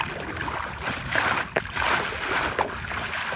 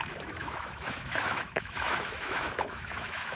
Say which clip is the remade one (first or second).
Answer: second